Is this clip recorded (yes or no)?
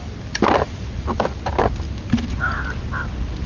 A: yes